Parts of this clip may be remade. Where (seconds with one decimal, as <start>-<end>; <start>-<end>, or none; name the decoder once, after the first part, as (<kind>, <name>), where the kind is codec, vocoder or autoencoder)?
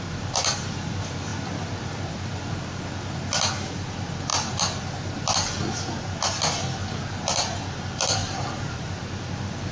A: 8.2-8.9 (vocoder, BigVGAN v2)